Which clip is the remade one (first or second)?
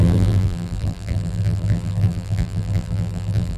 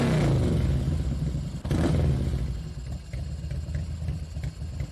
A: first